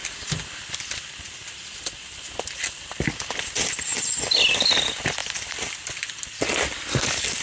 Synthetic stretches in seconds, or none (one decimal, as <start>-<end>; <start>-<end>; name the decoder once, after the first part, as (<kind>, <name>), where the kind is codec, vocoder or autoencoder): 3.9-4.7 (vocoder, BigVGAN v2); 5.2-6.4